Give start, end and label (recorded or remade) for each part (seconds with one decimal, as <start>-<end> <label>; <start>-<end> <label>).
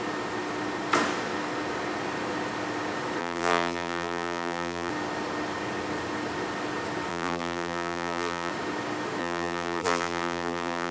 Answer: 0.0-3.2 recorded; 3.2-4.9 remade; 4.9-7.1 recorded; 7.1-8.5 remade; 8.5-9.2 recorded; 9.2-10.9 remade